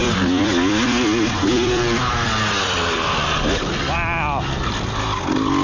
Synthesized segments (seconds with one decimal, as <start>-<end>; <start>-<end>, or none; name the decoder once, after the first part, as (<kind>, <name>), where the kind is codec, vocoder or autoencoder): 0.0-3.4 (vocoder, BigVGAN v2)